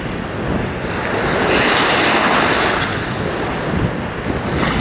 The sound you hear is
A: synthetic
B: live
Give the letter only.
B